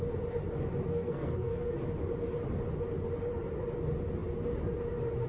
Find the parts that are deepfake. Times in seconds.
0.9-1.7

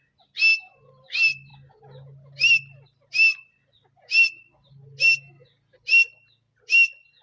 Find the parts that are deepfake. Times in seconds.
none